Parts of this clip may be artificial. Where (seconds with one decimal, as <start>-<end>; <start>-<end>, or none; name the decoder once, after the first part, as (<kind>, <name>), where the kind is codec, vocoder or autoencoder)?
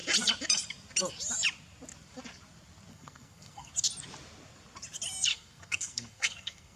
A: 2.9-3.7 (codec, SNAC); 5.3-6.8